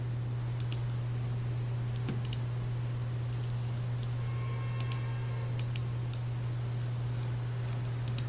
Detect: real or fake real